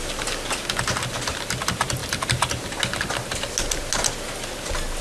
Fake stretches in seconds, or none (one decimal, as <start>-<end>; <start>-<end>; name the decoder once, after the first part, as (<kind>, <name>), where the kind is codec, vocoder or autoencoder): none